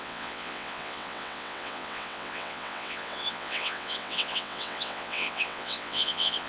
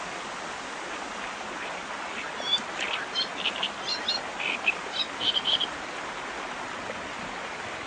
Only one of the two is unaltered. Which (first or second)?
second